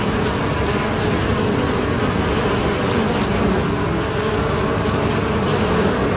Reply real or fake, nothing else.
real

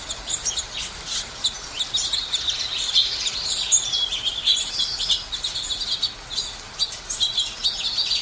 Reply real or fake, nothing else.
real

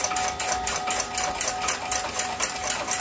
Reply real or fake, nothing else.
real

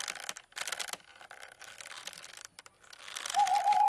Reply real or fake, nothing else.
real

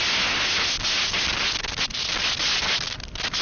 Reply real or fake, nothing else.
real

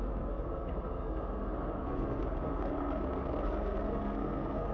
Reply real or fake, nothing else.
fake